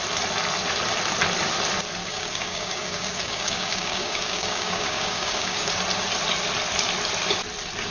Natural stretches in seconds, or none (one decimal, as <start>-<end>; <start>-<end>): 0.0-2.0; 5.7-7.9